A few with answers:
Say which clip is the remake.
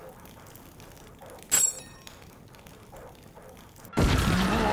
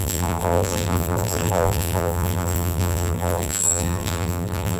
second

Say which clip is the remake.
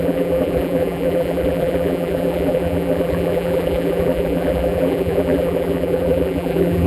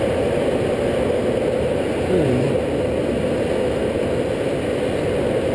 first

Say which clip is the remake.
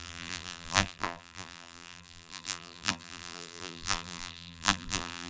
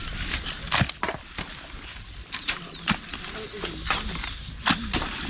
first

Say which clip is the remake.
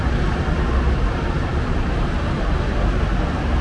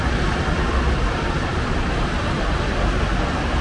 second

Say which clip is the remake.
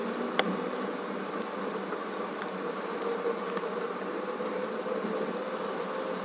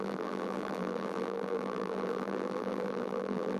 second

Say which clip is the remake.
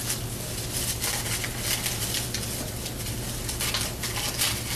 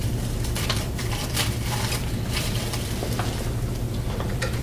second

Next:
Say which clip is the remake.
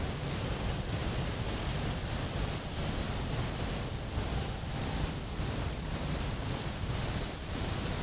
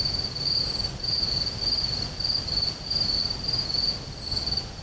first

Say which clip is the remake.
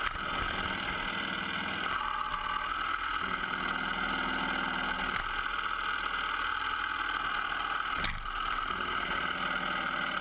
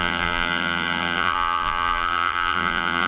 second